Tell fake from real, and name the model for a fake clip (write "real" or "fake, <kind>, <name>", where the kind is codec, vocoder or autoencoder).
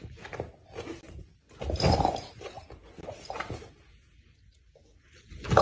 real